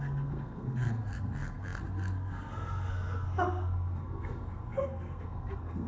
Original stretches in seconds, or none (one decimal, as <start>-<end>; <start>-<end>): none